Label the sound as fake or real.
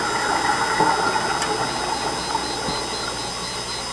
real